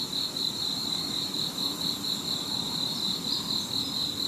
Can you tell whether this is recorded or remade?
recorded